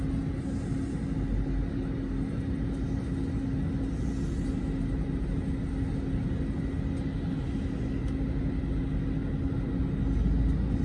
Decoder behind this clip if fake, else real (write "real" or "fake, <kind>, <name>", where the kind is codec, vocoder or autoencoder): real